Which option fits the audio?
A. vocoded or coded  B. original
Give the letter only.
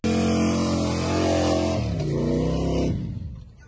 B